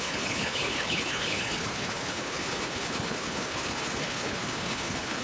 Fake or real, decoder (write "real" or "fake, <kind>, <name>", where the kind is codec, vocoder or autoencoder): fake, codec, HILCodec